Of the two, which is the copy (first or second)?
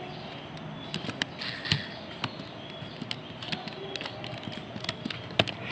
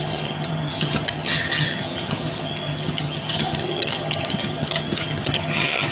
second